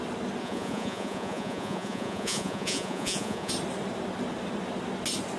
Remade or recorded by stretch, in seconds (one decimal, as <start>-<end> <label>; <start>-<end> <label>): 0.0-0.4 recorded; 0.4-3.5 remade; 3.5-5.4 recorded